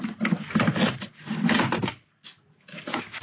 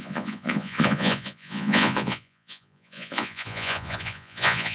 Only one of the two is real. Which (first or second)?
first